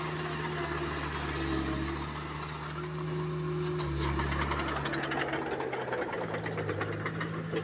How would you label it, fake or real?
real